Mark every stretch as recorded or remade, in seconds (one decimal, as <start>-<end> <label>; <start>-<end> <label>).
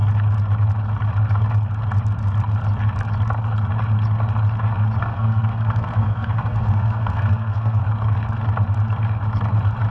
0.0-5.0 recorded; 5.0-7.8 remade; 7.8-9.9 recorded